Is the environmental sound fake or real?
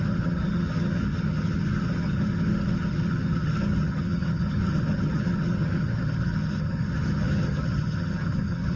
fake